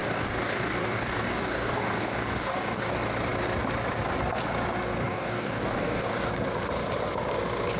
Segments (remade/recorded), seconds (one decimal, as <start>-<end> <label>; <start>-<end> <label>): 0.0-2.9 remade; 2.9-5.0 recorded; 5.0-6.3 remade; 6.3-7.8 recorded